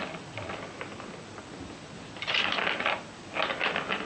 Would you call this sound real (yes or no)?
yes